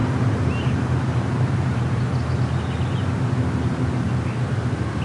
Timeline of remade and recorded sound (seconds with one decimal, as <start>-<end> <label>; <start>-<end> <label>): 0.0-2.0 remade; 2.0-5.0 recorded